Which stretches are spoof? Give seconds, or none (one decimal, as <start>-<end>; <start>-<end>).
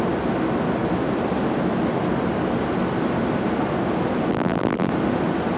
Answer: 4.3-4.9